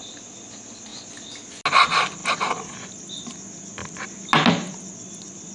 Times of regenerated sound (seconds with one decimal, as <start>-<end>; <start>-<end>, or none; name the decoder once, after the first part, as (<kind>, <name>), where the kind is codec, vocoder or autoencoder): none